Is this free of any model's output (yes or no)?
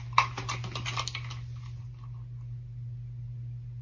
yes